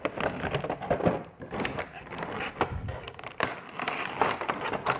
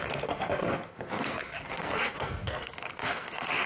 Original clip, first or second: first